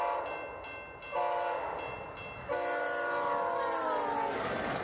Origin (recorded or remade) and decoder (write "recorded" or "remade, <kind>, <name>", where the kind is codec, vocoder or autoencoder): recorded